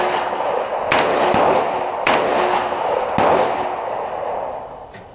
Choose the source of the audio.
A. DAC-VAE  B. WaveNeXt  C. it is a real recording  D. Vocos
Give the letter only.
C